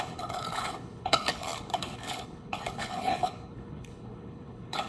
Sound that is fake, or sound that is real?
fake